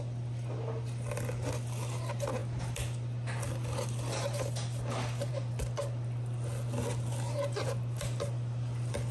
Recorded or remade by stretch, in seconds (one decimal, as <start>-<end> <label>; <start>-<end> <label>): 0.0-9.1 recorded